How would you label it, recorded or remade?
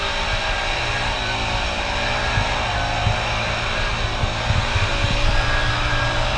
recorded